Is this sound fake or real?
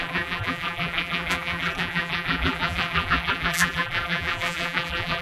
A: fake